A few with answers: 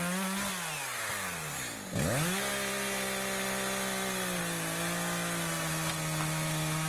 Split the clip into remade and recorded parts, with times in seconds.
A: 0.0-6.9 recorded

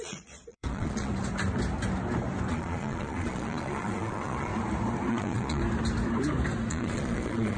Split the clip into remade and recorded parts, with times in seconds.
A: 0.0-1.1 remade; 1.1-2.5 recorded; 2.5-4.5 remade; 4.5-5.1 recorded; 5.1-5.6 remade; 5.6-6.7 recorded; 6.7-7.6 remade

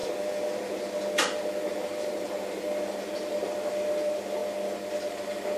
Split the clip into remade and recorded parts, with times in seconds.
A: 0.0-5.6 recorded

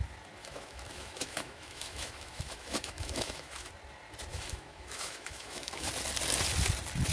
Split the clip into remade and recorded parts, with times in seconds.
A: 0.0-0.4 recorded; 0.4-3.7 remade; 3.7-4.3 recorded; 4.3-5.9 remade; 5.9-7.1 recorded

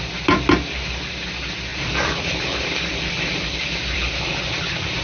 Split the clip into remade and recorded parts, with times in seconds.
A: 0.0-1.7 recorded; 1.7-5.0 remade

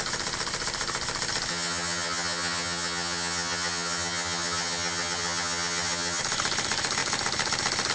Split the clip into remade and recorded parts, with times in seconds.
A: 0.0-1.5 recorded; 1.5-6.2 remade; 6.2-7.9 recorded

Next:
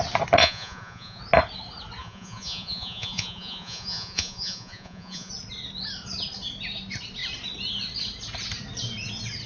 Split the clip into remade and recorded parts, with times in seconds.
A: 0.0-0.4 recorded; 0.4-1.2 remade; 1.2-2.0 recorded; 2.0-5.3 remade; 5.3-9.5 recorded

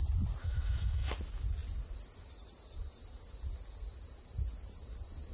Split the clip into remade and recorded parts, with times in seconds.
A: 0.0-0.4 recorded; 0.4-1.1 remade; 1.1-5.3 recorded